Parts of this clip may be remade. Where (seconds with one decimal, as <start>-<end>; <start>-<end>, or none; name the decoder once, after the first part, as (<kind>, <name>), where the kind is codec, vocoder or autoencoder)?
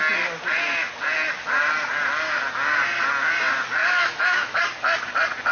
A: 3.8-4.6 (autoencoder, DAC-VAE)